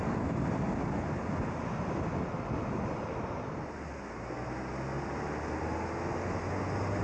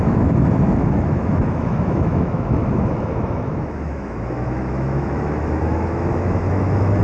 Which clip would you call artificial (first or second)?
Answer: second